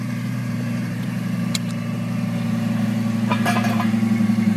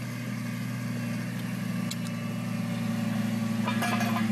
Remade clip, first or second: first